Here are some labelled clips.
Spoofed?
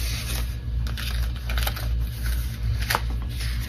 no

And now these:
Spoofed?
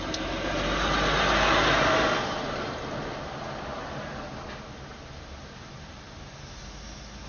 no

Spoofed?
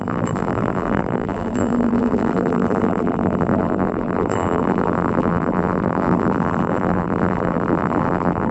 yes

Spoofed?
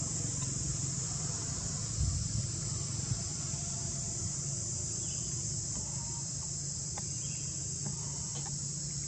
no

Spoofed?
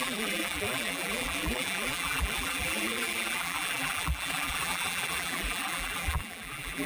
yes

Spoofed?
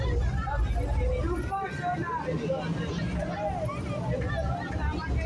no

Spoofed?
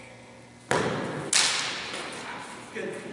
no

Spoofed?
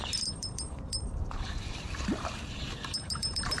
yes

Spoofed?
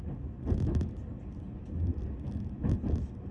no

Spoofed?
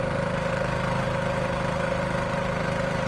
yes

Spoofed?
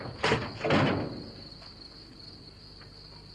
no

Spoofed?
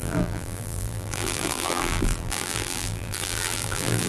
yes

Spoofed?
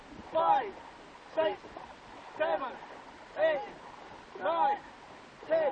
no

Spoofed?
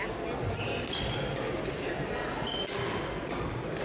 no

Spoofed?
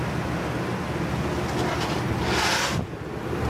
no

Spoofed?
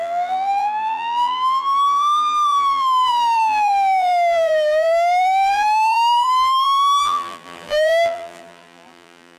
yes